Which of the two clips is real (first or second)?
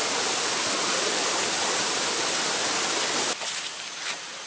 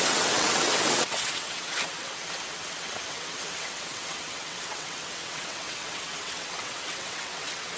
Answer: first